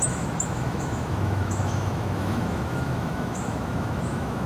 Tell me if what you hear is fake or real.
fake